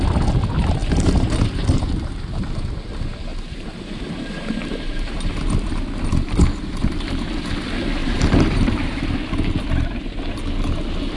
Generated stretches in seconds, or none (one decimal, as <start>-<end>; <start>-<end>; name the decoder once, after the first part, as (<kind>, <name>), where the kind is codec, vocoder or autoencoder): 0.8-2.4 (vocoder, BigVGAN v2); 3.3-5.3; 6.8-7.5; 8.0-9.0